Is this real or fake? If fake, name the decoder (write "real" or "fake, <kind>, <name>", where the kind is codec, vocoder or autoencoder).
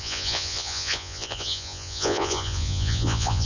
fake, vocoder, Vocos